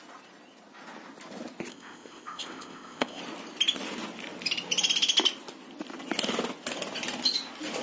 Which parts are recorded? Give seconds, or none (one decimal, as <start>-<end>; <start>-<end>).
0.0-1.7; 3.2-7.8